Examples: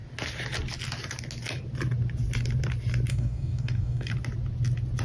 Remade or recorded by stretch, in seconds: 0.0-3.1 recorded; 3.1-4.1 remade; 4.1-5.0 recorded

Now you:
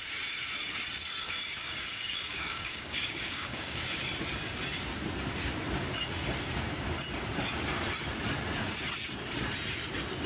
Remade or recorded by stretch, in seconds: 0.0-1.2 recorded; 1.2-3.8 remade; 3.8-10.3 recorded

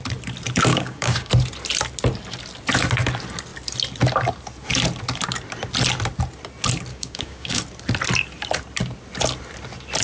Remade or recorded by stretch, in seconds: 0.0-0.7 recorded; 0.7-1.3 remade; 1.3-6.9 recorded; 6.9-7.6 remade; 7.6-10.0 recorded

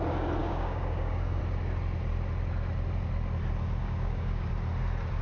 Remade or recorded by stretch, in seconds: 0.0-0.4 recorded; 0.4-1.4 remade; 1.4-3.8 recorded; 3.8-4.5 remade; 4.5-5.2 recorded

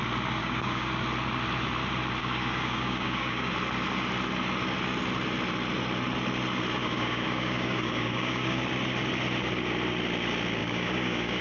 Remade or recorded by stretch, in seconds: 0.0-0.4 recorded; 0.4-0.9 remade; 0.9-2.2 recorded; 2.2-3.5 remade; 3.5-6.8 recorded; 6.8-8.6 remade; 8.6-10.6 recorded; 10.6-11.4 remade

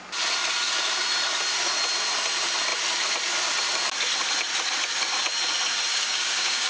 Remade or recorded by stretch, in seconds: 0.0-5.9 recorded; 5.9-6.7 remade

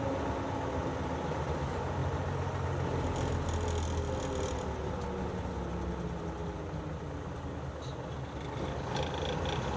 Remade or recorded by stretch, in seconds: 0.0-9.8 recorded

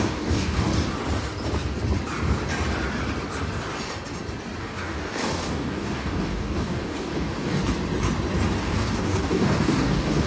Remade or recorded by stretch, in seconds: 0.0-0.7 remade; 0.7-4.6 recorded; 4.6-7.6 remade; 7.6-8.6 recorded; 8.6-10.3 remade